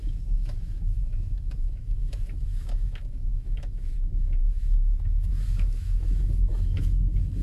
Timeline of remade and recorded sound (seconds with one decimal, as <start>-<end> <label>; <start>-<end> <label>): 0.0-7.4 remade